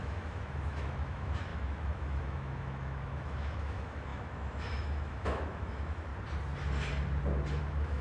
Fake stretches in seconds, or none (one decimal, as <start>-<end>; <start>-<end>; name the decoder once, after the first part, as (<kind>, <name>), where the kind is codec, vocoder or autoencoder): 0.0-6.1 (autoencoder, DAC-VAE); 7.6-8.0